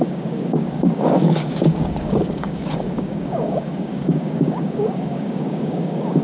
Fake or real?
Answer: fake